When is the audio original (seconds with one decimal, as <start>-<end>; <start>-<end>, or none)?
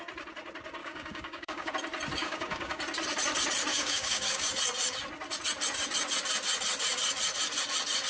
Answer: 0.0-0.8; 1.7-2.2; 2.8-3.7; 4.5-8.1